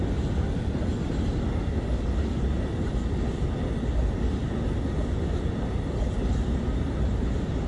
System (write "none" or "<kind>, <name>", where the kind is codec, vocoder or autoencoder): none